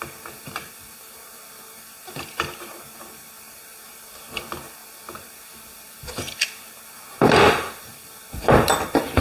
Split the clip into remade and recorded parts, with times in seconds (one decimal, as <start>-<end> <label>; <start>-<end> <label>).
0.0-9.2 remade